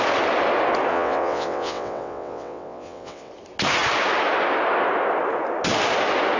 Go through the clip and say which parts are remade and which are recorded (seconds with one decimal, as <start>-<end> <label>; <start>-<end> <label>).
0.0-0.9 recorded; 0.9-3.3 remade; 3.3-6.4 recorded